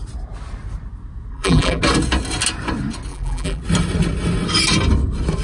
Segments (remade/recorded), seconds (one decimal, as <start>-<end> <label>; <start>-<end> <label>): 0.0-1.3 recorded; 1.3-1.8 remade; 1.8-3.1 recorded; 3.1-3.6 remade; 3.6-5.4 recorded